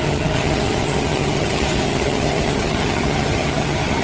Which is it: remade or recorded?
remade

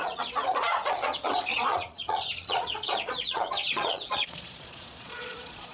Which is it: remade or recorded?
remade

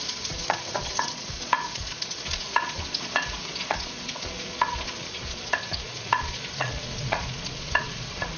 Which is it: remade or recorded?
remade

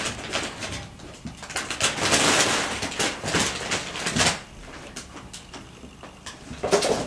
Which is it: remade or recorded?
recorded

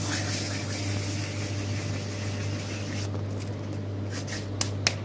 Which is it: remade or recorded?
recorded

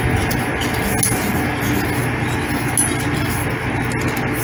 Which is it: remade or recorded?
recorded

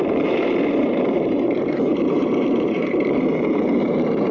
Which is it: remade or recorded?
remade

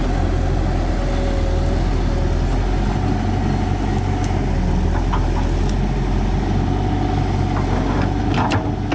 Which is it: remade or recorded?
recorded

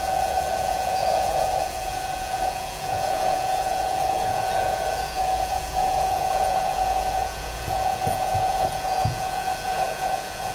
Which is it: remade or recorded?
remade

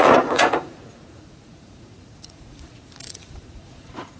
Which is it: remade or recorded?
remade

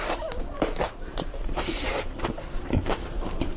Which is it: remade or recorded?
remade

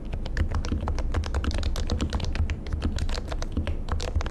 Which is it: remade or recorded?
recorded